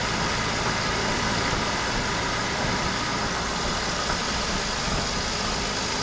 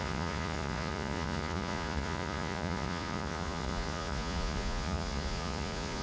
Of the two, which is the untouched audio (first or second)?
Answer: first